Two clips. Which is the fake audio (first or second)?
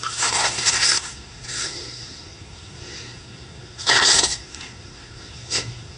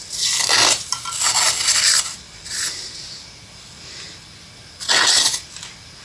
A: first